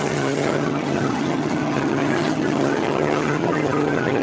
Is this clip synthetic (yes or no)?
yes